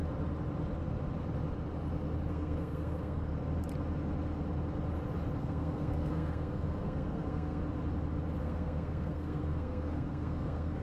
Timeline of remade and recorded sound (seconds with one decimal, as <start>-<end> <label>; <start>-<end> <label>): 0.0-2.3 recorded; 2.3-3.3 remade; 3.3-5.4 recorded; 5.4-7.6 remade; 7.6-8.4 recorded; 8.4-10.8 remade